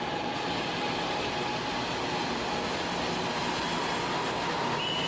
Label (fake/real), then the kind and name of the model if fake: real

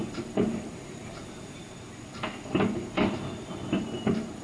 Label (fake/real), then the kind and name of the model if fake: fake, vocoder, BigVGAN v2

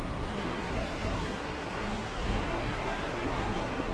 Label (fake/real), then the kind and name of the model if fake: fake, codec, SNAC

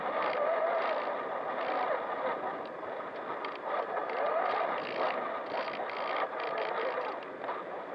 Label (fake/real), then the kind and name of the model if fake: real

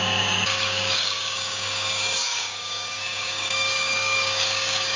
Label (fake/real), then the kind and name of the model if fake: fake, codec, DAC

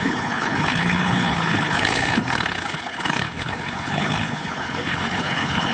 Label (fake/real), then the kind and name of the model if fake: fake, codec, HILCodec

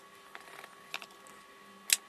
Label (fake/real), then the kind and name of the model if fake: real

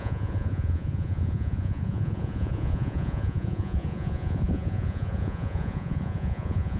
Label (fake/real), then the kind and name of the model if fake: fake, vocoder, Vocos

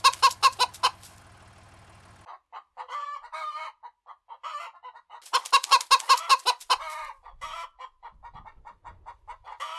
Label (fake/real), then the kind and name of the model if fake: real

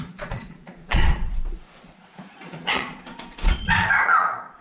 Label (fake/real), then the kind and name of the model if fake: fake, vocoder, Vocos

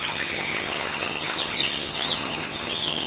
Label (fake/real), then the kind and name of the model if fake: fake, vocoder, HiFi-GAN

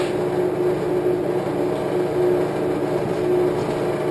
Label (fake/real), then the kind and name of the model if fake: real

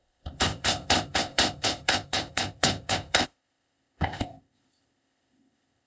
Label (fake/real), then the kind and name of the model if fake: fake, codec, ZipCodec